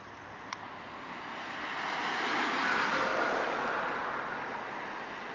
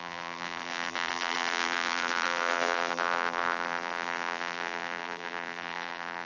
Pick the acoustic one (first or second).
first